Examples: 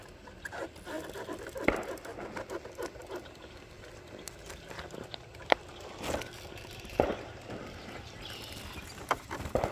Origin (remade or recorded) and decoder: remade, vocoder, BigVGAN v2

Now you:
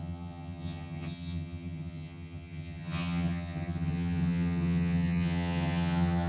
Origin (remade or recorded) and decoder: remade, vocoder, HiFi-GAN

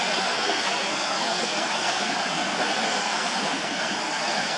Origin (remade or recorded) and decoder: remade, codec, SNAC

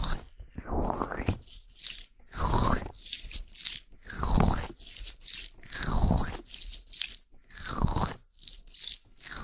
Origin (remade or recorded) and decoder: recorded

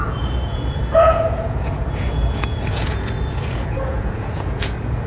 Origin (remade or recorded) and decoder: remade, vocoder, Vocos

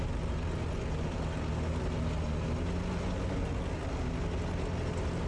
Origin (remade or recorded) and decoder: recorded